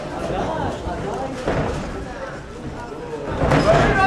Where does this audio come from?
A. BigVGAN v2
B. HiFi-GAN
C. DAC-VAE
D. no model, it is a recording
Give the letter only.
D